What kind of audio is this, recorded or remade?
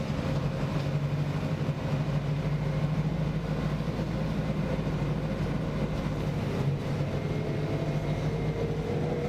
recorded